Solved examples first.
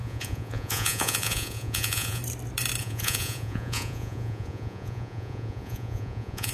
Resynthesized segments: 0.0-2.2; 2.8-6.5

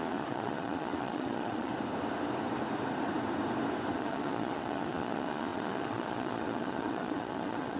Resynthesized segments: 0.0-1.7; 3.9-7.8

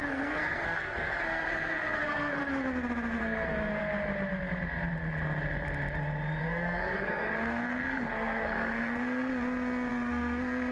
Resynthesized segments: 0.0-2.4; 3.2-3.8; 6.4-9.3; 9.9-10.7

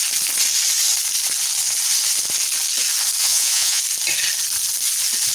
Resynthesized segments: 3.2-3.8